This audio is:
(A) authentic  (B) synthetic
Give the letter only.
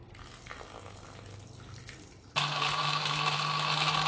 A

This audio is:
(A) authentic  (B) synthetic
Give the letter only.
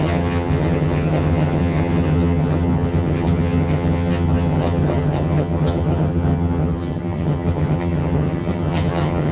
B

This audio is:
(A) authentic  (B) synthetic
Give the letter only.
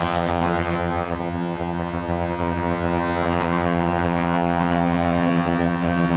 B